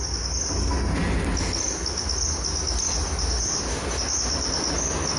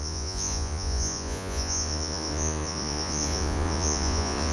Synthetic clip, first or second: second